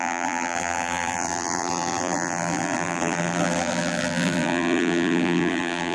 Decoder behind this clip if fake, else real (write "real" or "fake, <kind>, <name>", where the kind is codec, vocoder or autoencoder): fake, vocoder, BigVGAN v2